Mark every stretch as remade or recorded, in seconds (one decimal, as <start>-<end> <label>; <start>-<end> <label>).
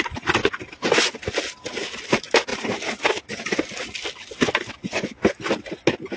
0.0-6.2 recorded